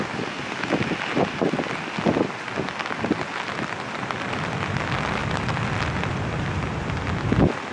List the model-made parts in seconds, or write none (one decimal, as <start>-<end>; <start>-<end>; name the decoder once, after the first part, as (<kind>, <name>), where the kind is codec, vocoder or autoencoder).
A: none